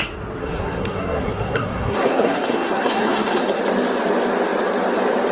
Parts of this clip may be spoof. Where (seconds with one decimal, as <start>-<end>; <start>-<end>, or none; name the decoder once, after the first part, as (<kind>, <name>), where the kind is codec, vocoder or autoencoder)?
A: 0.4-3.6 (codec, SNAC)